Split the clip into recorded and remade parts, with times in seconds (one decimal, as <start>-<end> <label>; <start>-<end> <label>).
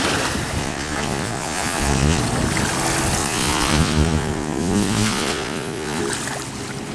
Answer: 0.0-0.6 recorded; 0.6-2.2 remade; 2.2-3.2 recorded; 3.2-6.0 remade; 6.0-6.9 recorded